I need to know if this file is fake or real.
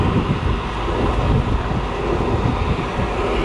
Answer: real